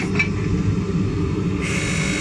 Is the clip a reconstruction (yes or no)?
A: no